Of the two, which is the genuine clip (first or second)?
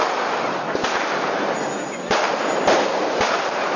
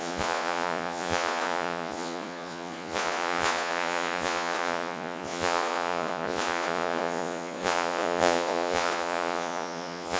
first